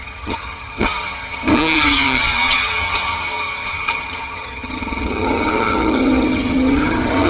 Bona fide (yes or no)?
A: no